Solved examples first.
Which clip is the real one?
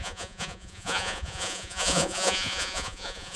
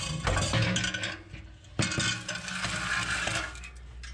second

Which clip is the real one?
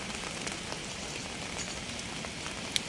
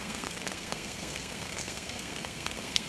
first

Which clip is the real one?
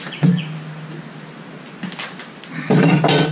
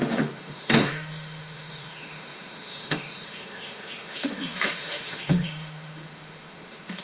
first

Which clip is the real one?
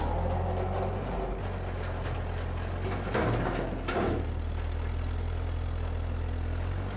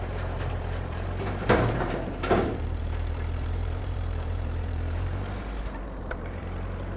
first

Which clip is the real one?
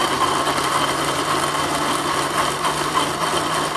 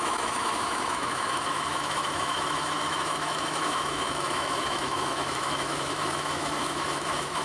first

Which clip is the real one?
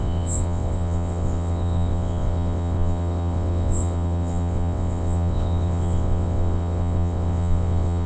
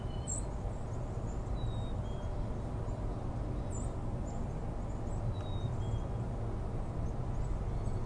second